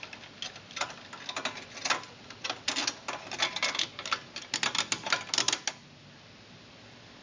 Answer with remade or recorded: recorded